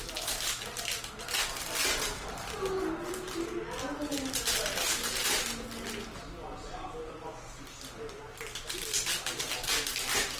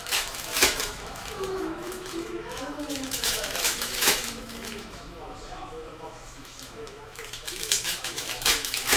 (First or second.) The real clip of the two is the first